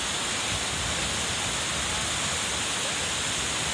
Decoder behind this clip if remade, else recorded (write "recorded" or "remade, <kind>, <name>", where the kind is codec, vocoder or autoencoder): recorded